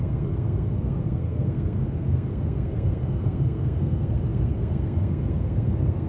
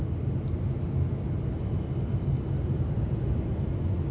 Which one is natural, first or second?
second